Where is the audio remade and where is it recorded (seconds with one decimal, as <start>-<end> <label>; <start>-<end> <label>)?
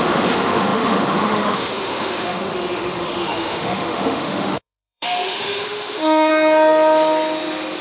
0.0-6.3 remade; 6.3-7.8 recorded